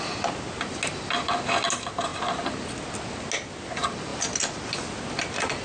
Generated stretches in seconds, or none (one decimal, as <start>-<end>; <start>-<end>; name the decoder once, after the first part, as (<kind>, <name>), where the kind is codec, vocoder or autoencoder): none